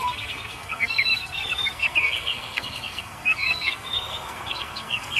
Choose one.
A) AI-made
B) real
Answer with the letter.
A